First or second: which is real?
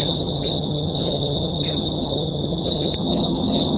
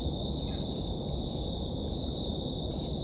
second